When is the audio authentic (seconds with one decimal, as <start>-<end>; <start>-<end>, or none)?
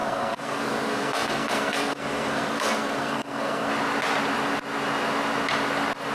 3.7-6.1